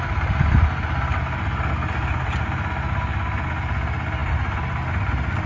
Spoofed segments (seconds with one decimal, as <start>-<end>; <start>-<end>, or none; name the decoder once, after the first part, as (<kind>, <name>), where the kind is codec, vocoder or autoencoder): none